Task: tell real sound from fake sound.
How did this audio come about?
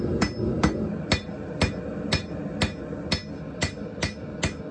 real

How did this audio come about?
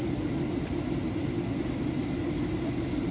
real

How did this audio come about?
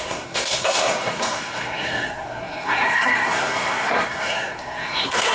fake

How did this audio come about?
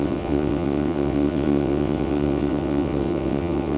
fake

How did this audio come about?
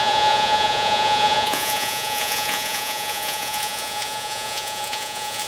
fake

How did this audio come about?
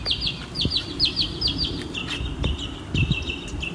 real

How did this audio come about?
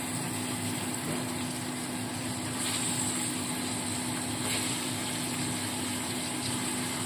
real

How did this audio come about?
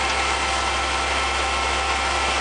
real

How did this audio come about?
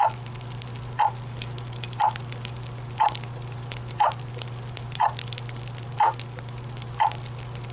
fake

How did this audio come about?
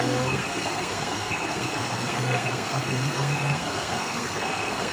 fake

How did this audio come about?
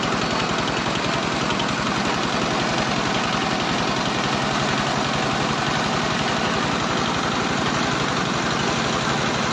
real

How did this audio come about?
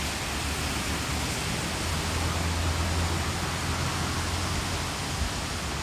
real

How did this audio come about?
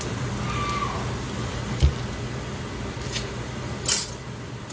real